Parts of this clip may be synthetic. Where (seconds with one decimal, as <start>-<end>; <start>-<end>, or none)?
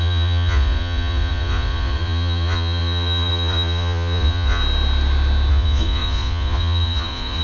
0.0-4.6; 5.5-7.4